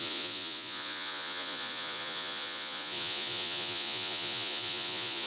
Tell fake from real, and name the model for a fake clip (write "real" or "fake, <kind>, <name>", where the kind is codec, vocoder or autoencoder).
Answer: fake, vocoder, Vocos